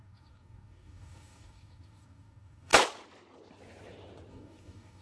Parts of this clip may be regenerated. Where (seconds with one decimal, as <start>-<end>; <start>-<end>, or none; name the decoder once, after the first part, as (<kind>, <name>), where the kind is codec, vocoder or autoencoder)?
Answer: 0.0-2.7 (codec, DAC); 4.3-5.0